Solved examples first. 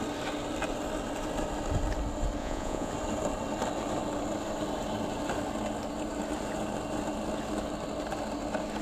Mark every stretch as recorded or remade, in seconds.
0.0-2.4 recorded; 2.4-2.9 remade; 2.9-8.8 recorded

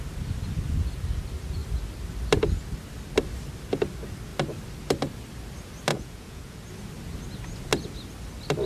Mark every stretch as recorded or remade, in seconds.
0.0-5.9 recorded; 5.9-6.7 remade; 6.7-8.7 recorded